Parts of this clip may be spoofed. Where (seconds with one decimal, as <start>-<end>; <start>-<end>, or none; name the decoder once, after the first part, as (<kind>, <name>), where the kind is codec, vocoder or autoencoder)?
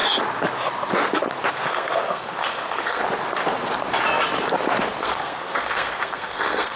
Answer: 1.5-3.0 (codec, SNAC); 5.0-6.8